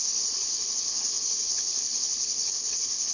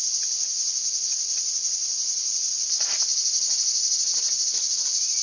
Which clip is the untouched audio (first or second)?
second